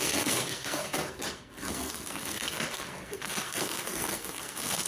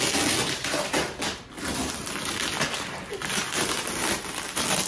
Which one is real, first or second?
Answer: second